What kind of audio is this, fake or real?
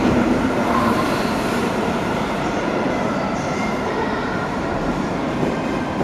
fake